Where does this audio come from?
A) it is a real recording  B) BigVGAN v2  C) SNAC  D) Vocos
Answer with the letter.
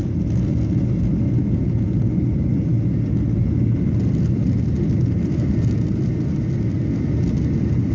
A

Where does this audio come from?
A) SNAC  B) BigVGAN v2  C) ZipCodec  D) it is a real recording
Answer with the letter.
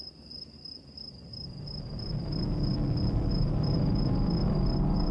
B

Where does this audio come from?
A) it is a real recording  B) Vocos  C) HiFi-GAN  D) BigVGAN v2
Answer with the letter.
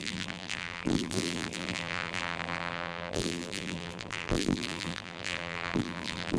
D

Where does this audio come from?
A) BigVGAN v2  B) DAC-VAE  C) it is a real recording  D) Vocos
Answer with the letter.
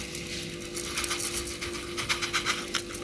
C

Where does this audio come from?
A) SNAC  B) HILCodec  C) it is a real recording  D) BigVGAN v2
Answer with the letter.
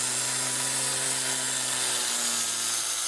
C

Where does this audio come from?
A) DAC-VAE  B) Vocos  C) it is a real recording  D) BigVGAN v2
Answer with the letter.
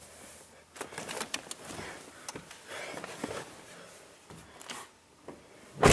C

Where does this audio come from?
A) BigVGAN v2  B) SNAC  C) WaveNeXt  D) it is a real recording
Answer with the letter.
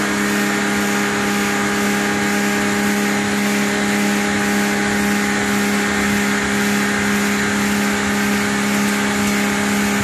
D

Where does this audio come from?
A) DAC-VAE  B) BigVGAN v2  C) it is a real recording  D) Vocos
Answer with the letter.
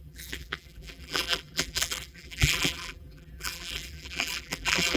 B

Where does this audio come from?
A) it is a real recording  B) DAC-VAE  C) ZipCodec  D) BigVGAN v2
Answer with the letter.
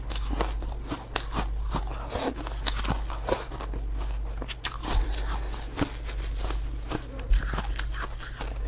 A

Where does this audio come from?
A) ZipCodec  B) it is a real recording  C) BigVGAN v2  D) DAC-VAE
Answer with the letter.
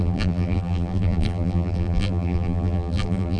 C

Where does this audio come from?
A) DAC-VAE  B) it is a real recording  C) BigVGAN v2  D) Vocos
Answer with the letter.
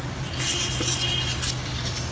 B